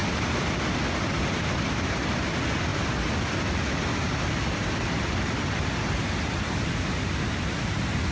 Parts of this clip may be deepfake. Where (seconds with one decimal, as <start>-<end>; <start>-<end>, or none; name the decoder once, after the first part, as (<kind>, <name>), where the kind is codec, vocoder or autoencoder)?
none